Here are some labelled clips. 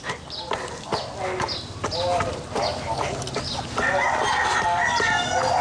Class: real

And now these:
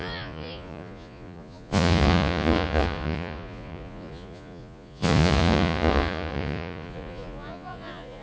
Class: fake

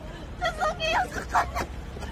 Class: real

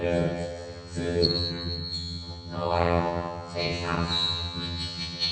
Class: fake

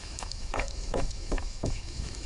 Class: fake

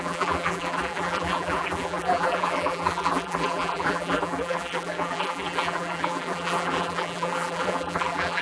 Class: fake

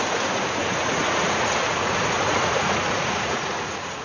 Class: fake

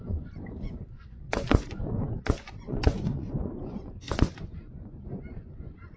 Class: fake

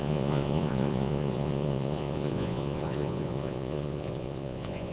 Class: fake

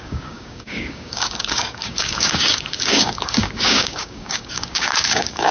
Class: fake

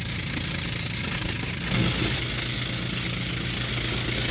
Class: real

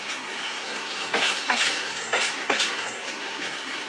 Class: fake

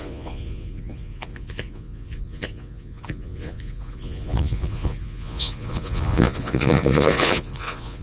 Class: fake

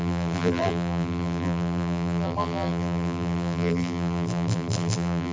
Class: fake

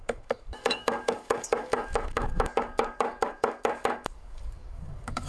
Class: fake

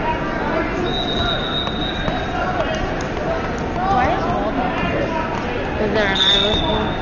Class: real